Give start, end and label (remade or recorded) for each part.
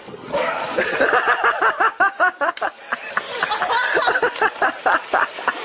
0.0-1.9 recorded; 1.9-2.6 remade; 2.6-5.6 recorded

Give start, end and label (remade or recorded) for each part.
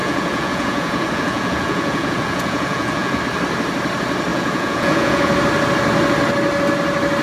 0.0-3.2 remade; 3.2-4.3 recorded; 4.3-5.3 remade; 5.3-7.2 recorded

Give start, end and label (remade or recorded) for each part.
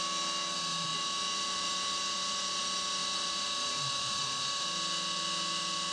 0.0-0.9 recorded; 0.9-2.6 remade; 2.6-3.0 recorded; 3.0-4.7 remade; 4.7-5.9 recorded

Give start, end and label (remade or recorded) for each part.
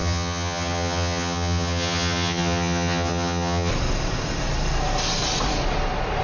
0.0-3.7 remade; 3.7-6.2 recorded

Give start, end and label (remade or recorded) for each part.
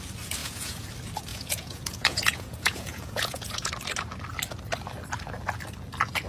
0.0-0.4 recorded; 0.4-0.9 remade; 0.9-1.3 recorded; 1.3-3.7 remade; 3.7-6.3 recorded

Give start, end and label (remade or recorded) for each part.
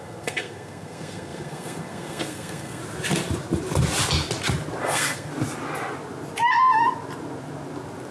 0.0-2.8 remade; 2.8-4.8 recorded; 4.8-5.3 remade; 5.3-8.1 recorded